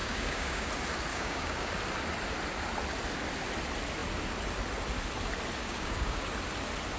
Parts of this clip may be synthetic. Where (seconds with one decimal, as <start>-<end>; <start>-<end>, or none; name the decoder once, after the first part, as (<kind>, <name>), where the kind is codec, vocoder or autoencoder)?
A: 0.0-0.7 (codec, DAC); 1.1-1.7; 5.6-6.3